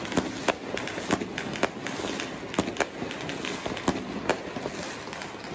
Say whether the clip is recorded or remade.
recorded